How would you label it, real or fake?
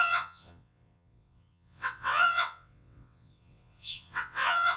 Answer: fake